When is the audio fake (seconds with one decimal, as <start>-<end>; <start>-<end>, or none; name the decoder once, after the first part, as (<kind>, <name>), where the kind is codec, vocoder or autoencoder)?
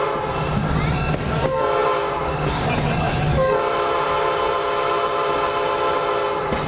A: none